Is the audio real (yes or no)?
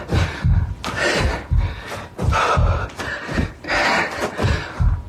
yes